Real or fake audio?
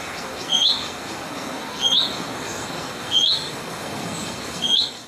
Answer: fake